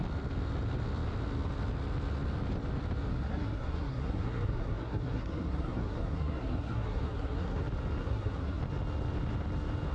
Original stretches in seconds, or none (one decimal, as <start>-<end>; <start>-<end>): 0.0-3.1; 7.6-8.0; 8.6-9.9